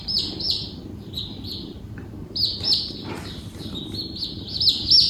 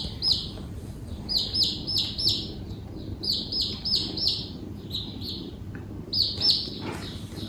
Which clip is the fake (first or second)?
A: first